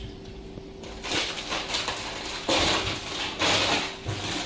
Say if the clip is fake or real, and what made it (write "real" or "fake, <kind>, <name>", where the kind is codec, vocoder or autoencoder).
real